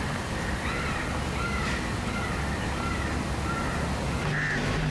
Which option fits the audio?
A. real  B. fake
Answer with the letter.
A